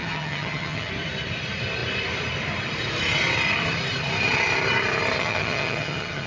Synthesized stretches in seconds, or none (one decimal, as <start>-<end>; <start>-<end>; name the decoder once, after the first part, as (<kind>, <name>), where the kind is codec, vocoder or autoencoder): 0.0-0.9 (vocoder, HiFi-GAN); 5.2-6.3

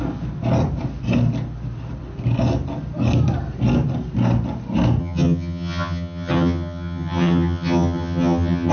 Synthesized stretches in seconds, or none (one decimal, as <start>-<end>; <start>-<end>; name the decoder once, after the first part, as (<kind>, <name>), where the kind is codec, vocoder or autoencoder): 5.0-8.7 (vocoder, HiFi-GAN)

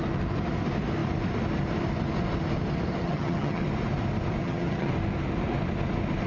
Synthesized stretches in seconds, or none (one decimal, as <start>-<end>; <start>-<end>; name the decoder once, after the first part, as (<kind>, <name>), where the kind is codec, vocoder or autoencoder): 3.0-3.6 (vocoder, HiFi-GAN); 4.4-4.9

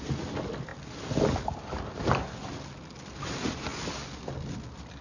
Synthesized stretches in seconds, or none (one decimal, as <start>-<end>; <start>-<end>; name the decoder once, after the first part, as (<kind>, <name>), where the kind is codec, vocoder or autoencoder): none

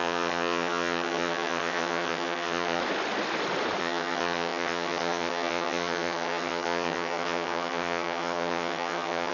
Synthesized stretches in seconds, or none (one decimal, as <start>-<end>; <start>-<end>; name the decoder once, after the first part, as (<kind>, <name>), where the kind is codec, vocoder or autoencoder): 0.0-2.8 (vocoder, HiFi-GAN); 3.8-9.3